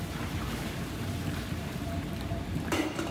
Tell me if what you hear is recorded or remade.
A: remade